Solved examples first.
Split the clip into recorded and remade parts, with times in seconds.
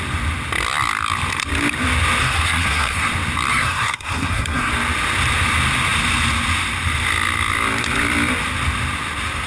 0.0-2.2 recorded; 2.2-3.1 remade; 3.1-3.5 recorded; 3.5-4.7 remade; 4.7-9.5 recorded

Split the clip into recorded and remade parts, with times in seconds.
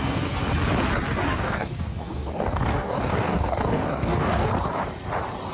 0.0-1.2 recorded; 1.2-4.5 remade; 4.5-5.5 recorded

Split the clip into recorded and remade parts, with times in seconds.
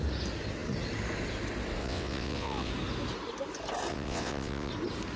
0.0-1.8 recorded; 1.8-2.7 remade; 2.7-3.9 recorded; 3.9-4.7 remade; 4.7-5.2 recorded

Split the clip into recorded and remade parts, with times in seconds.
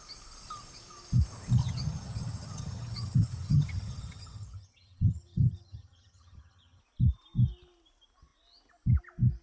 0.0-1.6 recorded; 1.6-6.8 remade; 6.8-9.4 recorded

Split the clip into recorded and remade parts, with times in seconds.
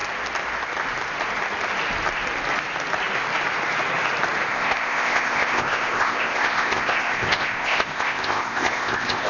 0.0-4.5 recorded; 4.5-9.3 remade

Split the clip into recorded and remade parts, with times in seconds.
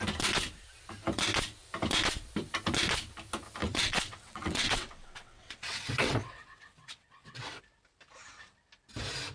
0.0-3.6 recorded; 3.6-7.6 remade; 7.6-9.3 recorded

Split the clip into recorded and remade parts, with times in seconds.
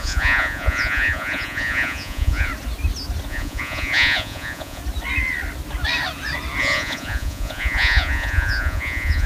0.0-2.5 remade; 2.5-3.3 recorded; 3.3-4.8 remade; 4.8-6.6 recorded; 6.6-9.3 remade